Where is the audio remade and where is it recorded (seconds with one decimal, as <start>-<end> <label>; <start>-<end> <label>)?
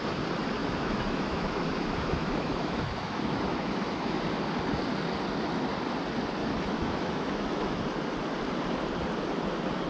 0.0-0.6 recorded; 0.6-4.2 remade; 4.2-6.4 recorded; 6.4-7.8 remade; 7.8-9.9 recorded